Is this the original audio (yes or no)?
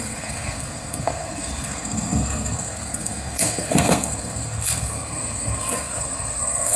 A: no